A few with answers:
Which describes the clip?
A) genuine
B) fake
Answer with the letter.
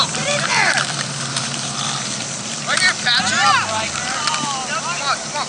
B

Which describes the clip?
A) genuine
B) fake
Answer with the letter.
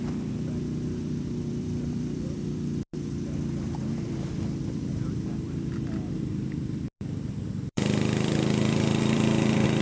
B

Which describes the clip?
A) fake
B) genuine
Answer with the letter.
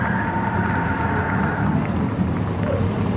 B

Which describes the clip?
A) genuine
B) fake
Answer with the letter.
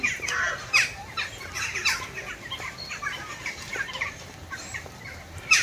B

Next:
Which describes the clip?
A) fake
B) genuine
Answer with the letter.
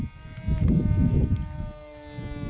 B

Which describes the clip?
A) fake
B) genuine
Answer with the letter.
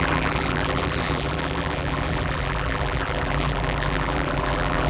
A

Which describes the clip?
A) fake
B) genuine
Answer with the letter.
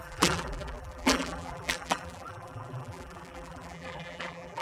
A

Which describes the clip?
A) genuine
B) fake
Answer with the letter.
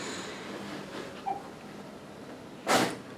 A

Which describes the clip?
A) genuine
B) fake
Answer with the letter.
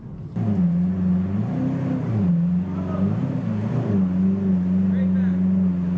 A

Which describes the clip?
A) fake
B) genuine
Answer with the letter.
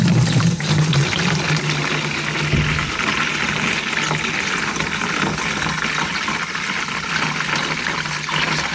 B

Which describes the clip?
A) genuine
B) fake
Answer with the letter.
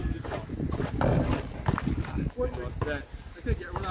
A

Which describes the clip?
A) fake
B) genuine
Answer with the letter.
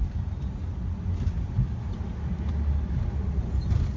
B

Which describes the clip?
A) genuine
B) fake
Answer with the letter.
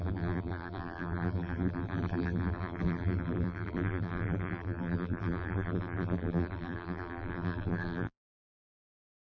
B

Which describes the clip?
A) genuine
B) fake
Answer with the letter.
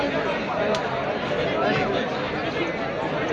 A